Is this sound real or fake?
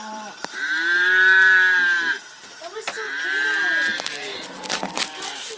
fake